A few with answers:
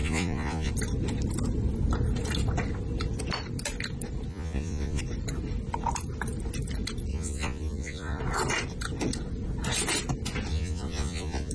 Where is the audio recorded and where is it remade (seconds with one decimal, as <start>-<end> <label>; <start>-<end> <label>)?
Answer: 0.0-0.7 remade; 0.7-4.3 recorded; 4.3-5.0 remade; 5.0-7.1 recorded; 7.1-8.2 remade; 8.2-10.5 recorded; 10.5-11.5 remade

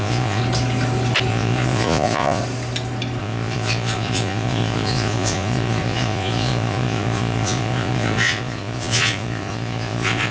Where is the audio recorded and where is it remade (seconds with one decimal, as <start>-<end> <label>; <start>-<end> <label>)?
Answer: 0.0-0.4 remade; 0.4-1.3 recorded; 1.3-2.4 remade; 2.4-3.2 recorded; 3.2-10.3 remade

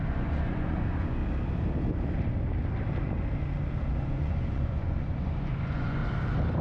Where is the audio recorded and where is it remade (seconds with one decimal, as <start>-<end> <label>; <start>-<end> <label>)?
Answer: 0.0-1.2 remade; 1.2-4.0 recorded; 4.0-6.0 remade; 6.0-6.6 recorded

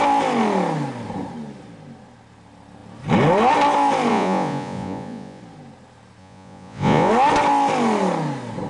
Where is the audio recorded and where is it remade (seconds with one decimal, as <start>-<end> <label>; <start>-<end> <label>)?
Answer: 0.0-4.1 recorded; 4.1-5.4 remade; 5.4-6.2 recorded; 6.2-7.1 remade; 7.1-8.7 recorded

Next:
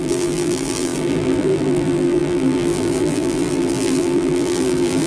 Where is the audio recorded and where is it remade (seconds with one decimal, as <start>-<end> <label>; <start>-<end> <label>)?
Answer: 0.0-5.1 remade